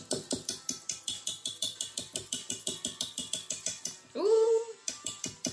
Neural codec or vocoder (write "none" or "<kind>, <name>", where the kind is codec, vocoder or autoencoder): vocoder, BigVGAN v2